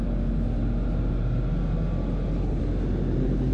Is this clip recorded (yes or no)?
yes